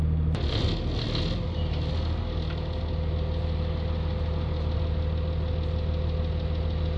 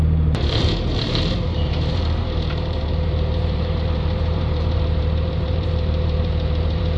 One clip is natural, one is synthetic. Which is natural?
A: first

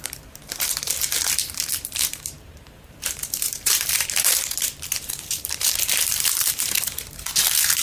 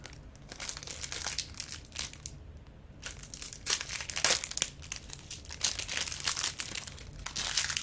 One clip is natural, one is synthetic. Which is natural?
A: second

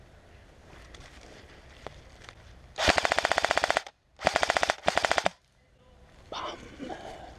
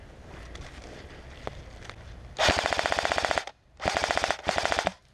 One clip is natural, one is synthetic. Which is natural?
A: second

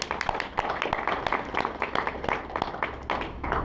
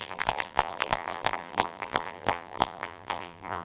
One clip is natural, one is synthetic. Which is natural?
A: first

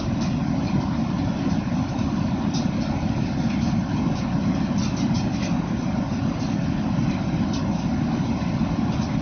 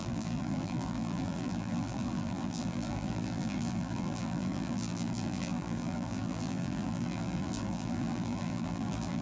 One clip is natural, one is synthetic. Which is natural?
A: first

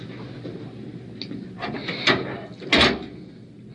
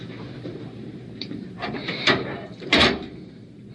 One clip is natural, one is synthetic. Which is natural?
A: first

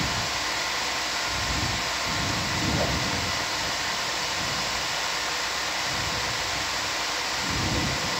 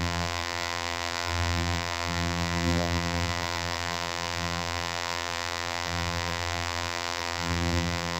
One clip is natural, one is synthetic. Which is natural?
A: first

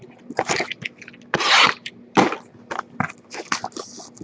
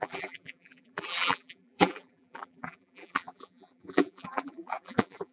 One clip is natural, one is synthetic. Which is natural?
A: first